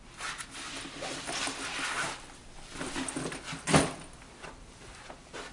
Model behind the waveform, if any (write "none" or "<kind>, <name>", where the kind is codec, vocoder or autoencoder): none